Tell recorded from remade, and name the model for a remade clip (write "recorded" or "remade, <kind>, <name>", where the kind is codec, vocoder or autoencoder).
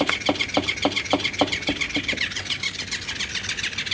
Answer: recorded